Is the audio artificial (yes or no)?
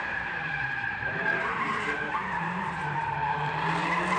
yes